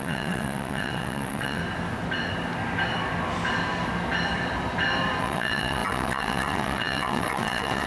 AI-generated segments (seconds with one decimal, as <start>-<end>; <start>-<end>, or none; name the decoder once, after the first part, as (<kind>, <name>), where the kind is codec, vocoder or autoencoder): 0.0-1.6 (vocoder, WaveNeXt); 5.2-7.9